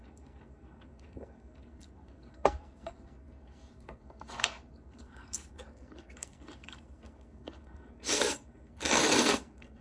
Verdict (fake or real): fake